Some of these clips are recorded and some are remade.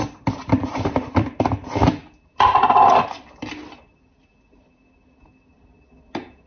recorded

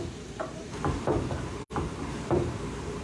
remade